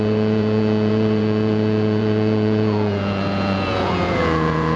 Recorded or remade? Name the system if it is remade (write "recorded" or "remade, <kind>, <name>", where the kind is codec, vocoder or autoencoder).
remade, vocoder, Vocos